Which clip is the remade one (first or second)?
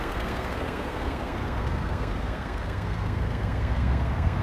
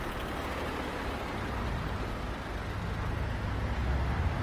first